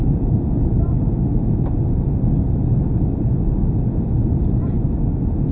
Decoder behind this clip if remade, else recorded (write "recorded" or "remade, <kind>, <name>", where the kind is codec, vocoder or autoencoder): recorded